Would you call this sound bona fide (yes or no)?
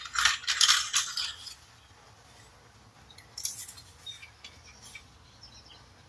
yes